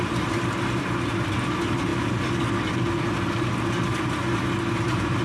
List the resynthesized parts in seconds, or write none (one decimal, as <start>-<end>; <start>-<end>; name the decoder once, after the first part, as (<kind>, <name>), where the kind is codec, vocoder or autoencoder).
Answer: none

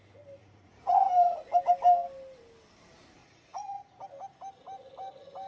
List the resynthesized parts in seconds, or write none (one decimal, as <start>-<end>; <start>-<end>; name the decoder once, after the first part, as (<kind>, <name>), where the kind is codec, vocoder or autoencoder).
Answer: 0.4-1.0 (vocoder, Vocos); 3.2-4.0